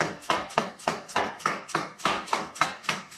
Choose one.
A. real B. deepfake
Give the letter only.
B